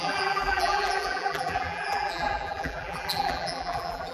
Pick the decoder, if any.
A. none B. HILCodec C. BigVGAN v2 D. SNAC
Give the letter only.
C